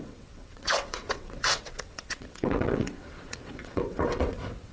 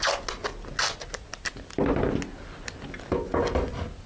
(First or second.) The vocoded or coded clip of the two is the first